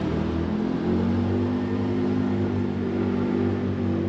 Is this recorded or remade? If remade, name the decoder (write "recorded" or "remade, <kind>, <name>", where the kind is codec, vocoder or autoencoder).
recorded